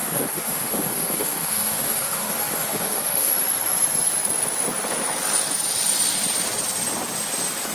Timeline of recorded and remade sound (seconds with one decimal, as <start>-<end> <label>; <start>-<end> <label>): 0.0-3.3 remade; 3.3-7.7 recorded